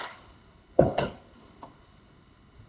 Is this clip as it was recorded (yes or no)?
no